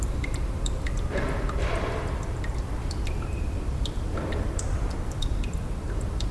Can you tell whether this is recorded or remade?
remade